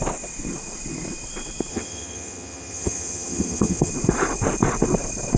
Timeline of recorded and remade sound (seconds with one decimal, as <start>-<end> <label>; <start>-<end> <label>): 0.0-1.7 recorded; 1.7-3.9 remade; 3.9-5.4 recorded